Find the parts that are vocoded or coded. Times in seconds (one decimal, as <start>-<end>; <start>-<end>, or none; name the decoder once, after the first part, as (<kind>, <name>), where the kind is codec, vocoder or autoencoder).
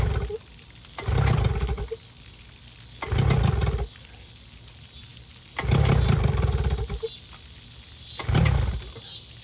none